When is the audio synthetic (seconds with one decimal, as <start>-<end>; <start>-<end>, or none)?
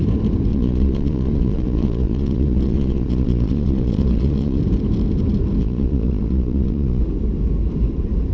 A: 0.5-4.6; 5.6-7.0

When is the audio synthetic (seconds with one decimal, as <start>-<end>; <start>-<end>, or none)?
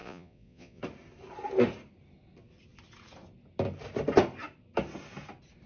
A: 0.0-0.8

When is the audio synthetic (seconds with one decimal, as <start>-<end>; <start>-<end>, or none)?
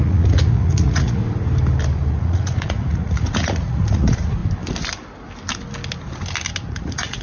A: 0.0-1.2; 2.1-4.4; 6.7-7.2